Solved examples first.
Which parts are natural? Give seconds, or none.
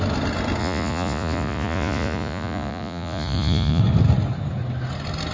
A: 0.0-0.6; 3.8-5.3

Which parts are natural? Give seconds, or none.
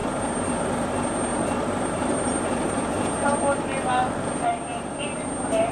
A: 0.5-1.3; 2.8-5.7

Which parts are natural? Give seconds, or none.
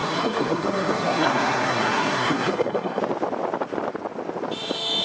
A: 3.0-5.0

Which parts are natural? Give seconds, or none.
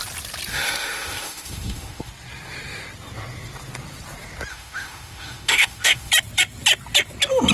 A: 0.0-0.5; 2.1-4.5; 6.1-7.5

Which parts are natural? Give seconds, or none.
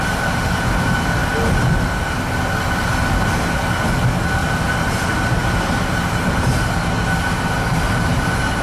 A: 0.0-4.4; 5.0-8.6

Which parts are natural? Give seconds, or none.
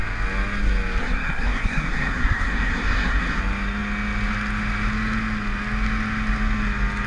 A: 0.0-1.0; 3.4-7.1